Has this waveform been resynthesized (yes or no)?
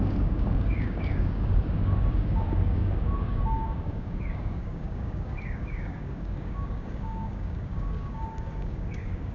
yes